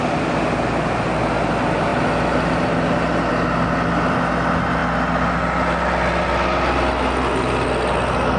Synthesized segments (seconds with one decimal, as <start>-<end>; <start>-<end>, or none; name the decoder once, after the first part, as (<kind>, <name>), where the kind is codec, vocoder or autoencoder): none